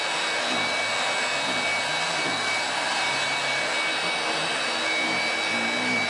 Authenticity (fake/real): real